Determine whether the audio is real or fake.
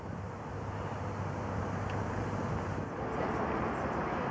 real